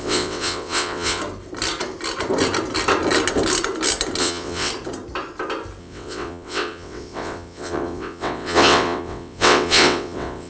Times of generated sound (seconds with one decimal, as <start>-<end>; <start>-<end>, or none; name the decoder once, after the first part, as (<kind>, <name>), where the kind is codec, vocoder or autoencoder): 0.0-1.2 (vocoder, WaveNeXt); 4.2-4.7; 5.8-10.5